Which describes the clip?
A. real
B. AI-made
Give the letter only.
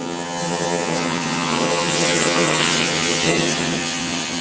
B